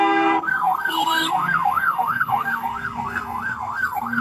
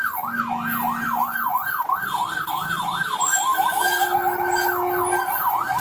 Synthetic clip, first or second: first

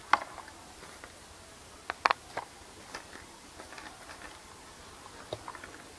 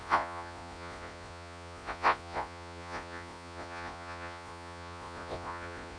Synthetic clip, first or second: second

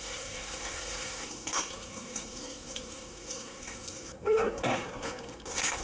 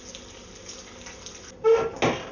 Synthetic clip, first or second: first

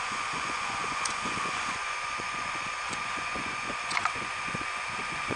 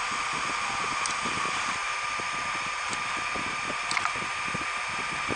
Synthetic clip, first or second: first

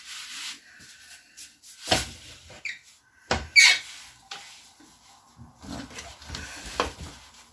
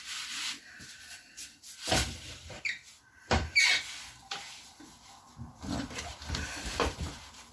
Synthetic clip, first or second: second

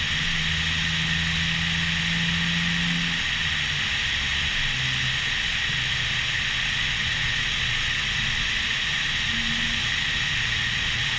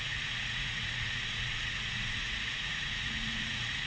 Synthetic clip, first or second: second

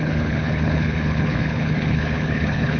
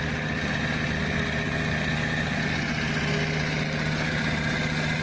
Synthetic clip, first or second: first